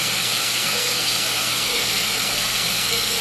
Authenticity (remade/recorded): remade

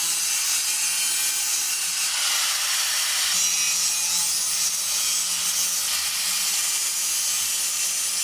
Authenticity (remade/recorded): recorded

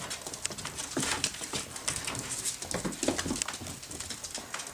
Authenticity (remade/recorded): recorded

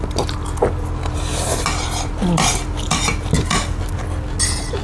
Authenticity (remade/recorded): recorded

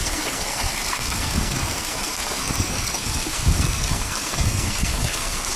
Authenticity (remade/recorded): remade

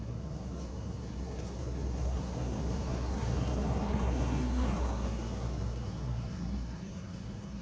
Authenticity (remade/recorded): remade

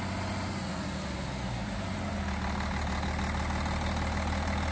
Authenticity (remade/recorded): recorded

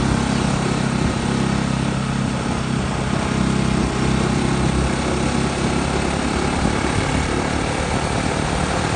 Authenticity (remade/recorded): recorded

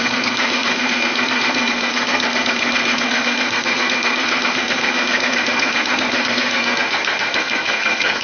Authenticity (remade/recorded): remade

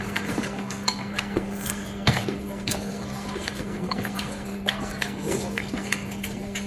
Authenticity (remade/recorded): remade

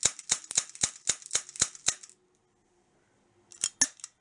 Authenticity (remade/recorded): recorded